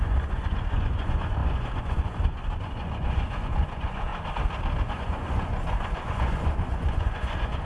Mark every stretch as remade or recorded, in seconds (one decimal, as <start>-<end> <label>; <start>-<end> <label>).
0.0-4.1 remade; 4.1-4.9 recorded; 4.9-7.7 remade